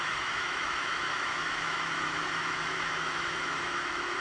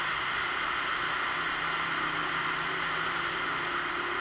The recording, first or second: second